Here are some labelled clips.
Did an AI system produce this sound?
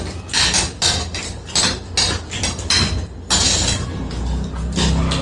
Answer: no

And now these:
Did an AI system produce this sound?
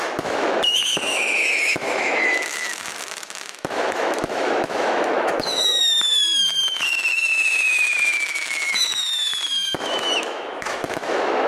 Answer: yes